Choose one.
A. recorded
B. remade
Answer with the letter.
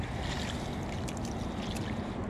A